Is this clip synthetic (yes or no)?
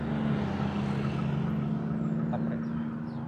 no